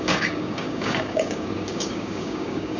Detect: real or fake fake